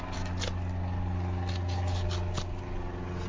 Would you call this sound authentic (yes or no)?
yes